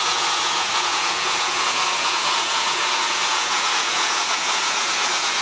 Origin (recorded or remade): remade